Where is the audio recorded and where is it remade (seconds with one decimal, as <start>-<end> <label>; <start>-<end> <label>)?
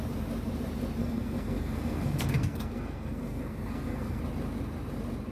0.0-1.0 recorded; 1.0-4.2 remade; 4.2-5.3 recorded